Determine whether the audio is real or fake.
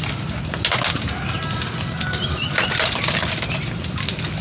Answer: real